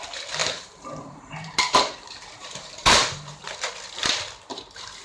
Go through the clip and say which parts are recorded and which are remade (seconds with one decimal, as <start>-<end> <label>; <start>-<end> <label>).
0.0-0.4 recorded; 0.4-3.4 remade; 3.4-5.0 recorded